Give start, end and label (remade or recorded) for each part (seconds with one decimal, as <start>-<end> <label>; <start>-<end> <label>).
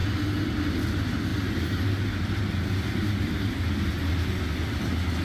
0.0-5.2 recorded